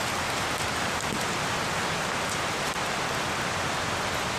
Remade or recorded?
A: recorded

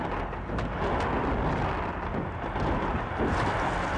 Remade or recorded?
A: recorded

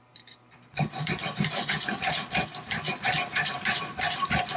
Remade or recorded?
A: remade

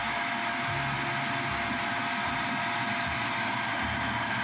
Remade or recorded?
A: recorded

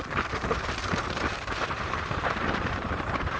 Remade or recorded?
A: remade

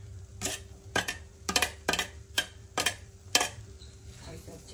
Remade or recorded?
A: remade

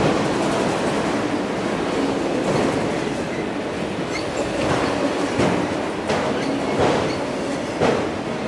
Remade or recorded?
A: recorded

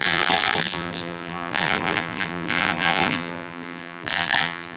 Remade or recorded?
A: remade